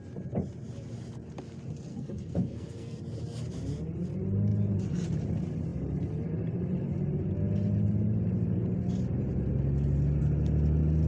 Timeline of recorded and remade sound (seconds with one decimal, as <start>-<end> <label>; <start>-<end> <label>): 0.0-1.9 recorded; 1.9-3.0 remade; 3.0-11.1 recorded